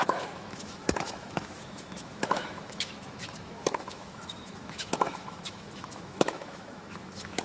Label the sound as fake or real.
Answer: fake